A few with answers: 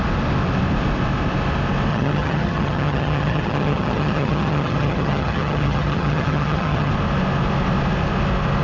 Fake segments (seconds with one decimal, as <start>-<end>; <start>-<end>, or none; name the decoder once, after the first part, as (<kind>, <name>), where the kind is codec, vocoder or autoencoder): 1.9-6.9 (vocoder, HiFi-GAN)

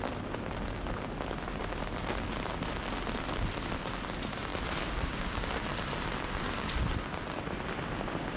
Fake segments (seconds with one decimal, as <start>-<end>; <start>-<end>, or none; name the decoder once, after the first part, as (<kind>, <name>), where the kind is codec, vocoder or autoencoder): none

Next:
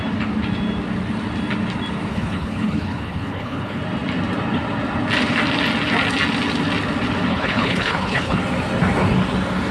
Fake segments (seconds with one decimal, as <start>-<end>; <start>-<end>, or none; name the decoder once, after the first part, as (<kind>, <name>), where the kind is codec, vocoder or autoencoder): 2.1-3.8 (codec, HILCodec); 7.3-8.4

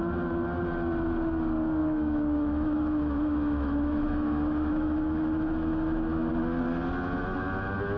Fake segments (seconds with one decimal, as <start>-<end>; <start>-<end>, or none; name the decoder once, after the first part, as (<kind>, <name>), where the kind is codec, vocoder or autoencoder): 1.8-6.3 (autoencoder, DAC-VAE)